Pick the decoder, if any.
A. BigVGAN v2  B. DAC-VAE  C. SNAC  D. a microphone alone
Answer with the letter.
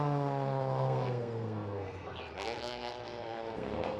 C